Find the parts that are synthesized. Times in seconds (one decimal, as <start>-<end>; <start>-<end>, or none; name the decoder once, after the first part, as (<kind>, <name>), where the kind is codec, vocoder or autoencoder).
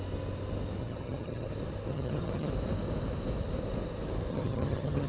0.8-1.5 (vocoder, HiFi-GAN); 1.9-2.5; 4.3-5.1